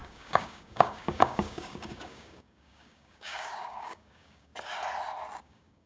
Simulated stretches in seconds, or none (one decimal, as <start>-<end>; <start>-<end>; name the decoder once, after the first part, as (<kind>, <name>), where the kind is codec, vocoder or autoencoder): 0.0-4.5 (codec, DAC); 5.4-5.9